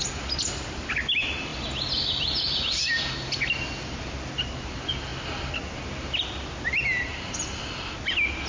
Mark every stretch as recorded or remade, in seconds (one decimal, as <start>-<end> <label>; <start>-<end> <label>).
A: 0.0-7.1 recorded; 7.1-8.1 remade; 8.1-8.5 recorded

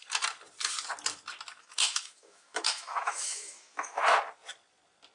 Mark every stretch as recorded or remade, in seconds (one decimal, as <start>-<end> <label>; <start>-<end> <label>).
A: 0.0-1.6 recorded; 1.6-4.0 remade; 4.0-5.1 recorded

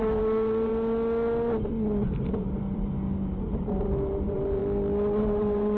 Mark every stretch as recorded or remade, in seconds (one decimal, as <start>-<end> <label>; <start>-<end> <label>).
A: 0.0-0.7 remade; 0.7-2.6 recorded; 2.6-4.6 remade; 4.6-5.2 recorded; 5.2-5.8 remade

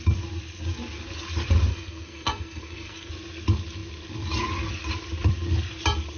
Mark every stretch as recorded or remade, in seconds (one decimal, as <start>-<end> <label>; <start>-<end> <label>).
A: 0.0-1.7 recorded; 1.7-3.1 remade; 3.1-6.2 recorded

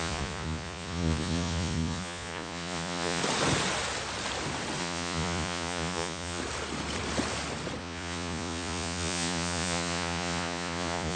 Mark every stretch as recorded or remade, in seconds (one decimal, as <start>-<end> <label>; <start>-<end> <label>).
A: 0.0-3.2 remade; 3.2-4.8 recorded; 4.8-6.4 remade; 6.4-7.8 recorded; 7.8-11.2 remade

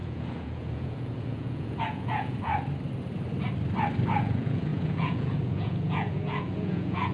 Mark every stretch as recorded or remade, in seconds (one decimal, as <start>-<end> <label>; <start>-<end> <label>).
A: 0.0-2.5 remade; 2.5-4.2 recorded; 4.2-7.1 remade

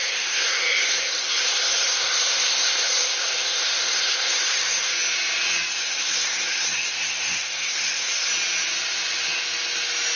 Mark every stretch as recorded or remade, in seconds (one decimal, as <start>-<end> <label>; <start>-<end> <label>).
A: 0.0-4.9 remade; 4.9-5.7 recorded; 5.7-8.3 remade; 8.3-10.2 recorded

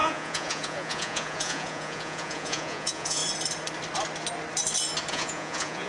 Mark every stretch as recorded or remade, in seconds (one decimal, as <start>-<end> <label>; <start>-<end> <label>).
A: 0.0-3.2 remade; 3.2-5.1 recorded; 5.1-5.9 remade